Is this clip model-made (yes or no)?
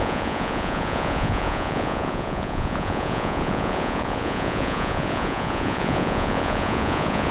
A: yes